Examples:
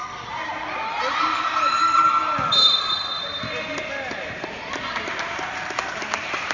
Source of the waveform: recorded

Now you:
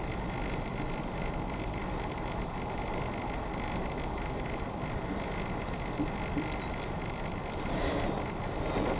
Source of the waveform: recorded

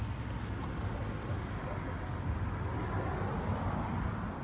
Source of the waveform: recorded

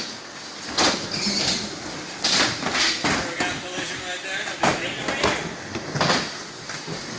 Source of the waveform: recorded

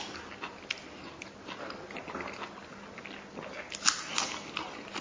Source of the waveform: recorded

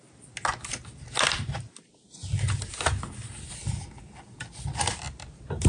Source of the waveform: recorded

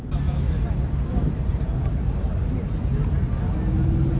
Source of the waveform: recorded